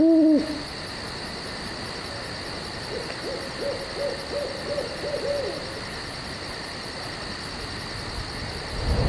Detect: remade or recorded recorded